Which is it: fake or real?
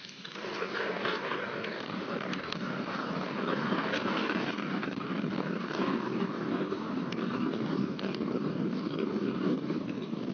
fake